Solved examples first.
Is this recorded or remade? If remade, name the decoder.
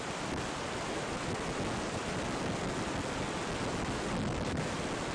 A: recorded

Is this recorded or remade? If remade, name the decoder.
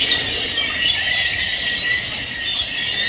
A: recorded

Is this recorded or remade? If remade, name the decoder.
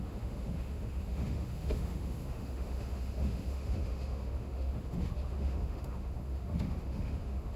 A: remade, autoencoder, DAC-VAE